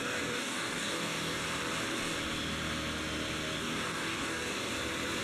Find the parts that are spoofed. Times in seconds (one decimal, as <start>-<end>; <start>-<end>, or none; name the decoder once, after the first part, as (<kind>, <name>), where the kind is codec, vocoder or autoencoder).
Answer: 0.0-1.4 (codec, DAC); 3.6-4.7